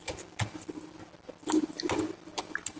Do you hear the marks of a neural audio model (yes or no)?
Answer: no